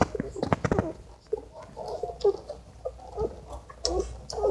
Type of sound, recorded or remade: recorded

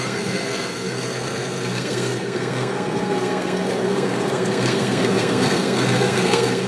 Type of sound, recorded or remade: remade